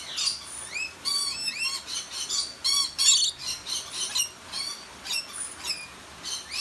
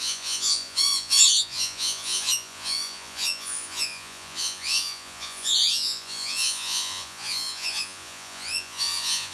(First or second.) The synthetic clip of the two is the second